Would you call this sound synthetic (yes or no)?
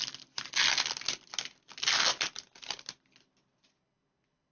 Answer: no